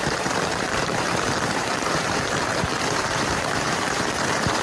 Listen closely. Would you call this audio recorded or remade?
remade